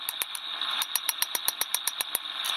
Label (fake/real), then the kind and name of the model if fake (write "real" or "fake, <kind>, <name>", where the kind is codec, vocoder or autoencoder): fake, vocoder, BigVGAN v2